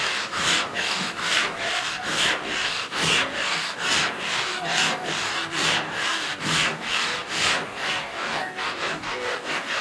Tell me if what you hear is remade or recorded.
remade